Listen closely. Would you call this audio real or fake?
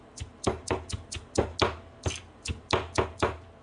real